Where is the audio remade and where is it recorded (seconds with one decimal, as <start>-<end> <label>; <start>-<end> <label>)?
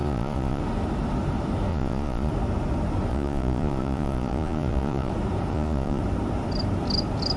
0.0-0.6 remade; 0.6-1.7 recorded; 1.7-2.3 remade; 2.3-3.1 recorded; 3.1-5.1 remade; 5.1-5.5 recorded; 5.5-6.0 remade; 6.0-7.4 recorded